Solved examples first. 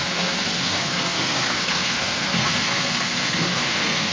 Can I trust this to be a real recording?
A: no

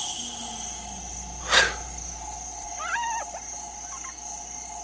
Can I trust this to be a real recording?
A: yes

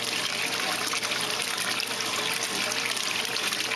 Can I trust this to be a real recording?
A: yes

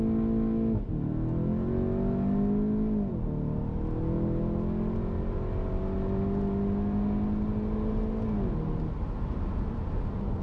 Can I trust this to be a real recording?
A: yes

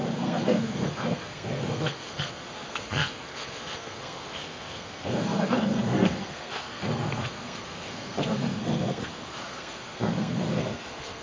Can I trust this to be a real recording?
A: no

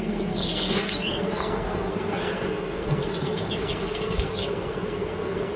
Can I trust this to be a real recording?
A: no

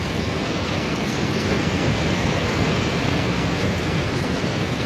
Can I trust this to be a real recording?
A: no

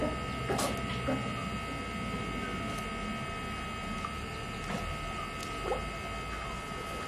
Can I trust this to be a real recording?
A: yes